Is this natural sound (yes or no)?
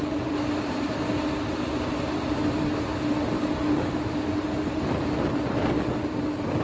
yes